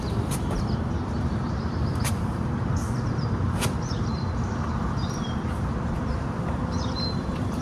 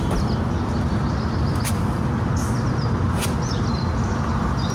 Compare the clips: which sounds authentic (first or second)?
second